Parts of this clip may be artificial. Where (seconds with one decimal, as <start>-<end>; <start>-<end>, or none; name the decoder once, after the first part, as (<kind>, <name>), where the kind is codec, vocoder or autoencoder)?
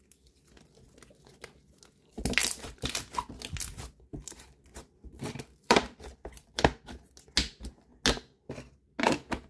2.4-3.0 (vocoder, BigVGAN v2); 4.1-6.6